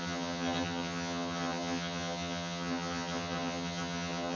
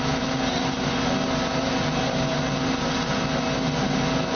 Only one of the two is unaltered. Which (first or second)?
second